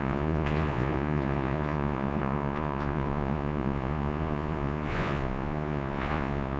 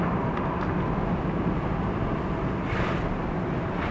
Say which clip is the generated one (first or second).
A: first